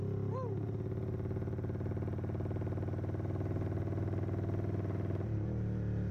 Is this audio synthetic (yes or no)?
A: no